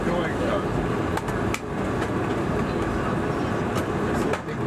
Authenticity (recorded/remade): recorded